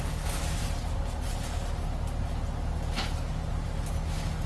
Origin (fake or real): real